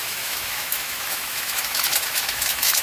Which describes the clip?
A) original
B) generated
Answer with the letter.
B